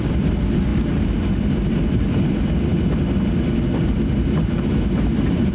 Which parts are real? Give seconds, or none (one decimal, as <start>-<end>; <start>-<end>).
2.7-5.5